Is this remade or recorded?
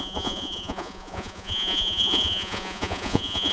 remade